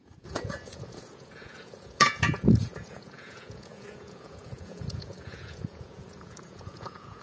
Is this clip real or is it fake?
fake